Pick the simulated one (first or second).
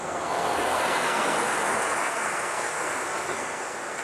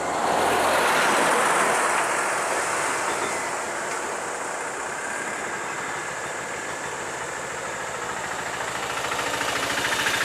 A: first